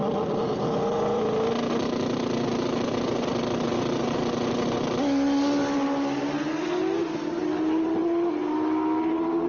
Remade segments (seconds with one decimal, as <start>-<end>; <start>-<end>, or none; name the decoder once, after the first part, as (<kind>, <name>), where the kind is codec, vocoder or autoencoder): none